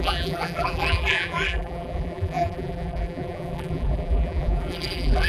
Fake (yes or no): yes